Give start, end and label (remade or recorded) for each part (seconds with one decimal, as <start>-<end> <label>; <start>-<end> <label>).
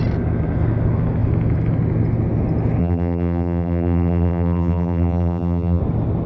0.0-2.8 recorded; 2.8-5.8 remade; 5.8-6.3 recorded